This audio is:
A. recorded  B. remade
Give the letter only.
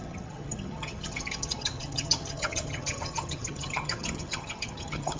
B